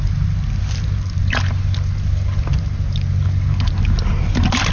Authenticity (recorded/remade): recorded